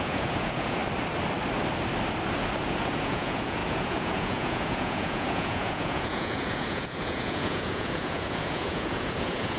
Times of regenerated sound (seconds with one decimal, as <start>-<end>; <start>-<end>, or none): 0.0-0.8; 2.6-9.6